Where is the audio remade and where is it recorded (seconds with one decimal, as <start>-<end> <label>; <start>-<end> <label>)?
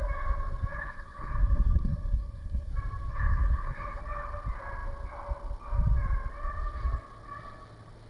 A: 0.0-0.7 recorded; 0.7-2.7 remade; 2.7-3.1 recorded; 3.1-4.0 remade; 4.0-8.1 recorded